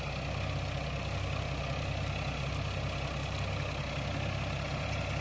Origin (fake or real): real